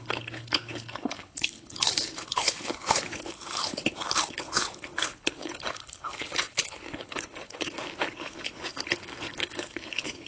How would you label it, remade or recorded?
remade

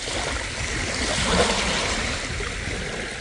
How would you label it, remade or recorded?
recorded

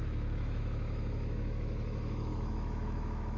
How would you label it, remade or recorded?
remade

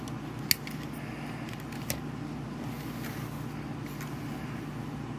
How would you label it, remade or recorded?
recorded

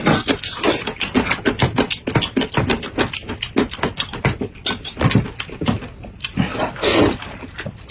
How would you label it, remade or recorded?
recorded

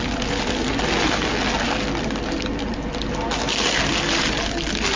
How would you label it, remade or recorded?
recorded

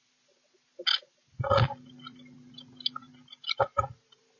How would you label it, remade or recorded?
recorded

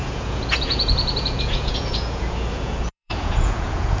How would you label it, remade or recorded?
remade